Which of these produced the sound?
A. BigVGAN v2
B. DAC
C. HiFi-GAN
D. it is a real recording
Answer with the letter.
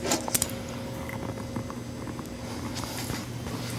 D